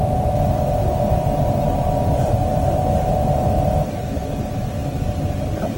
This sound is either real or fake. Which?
real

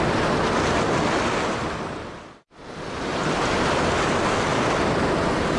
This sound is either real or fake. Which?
real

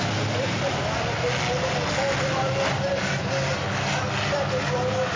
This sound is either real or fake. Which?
real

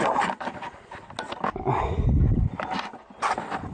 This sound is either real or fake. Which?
real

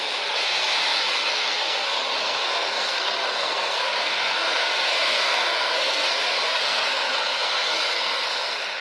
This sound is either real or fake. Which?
fake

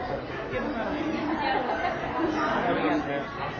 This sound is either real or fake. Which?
real